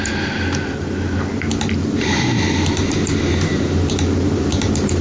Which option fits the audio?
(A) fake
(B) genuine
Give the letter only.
B